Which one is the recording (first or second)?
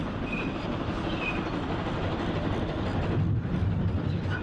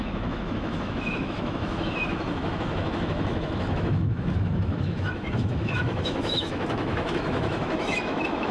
first